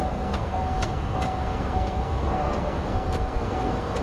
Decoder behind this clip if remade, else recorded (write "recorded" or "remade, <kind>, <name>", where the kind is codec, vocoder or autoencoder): remade, codec, SNAC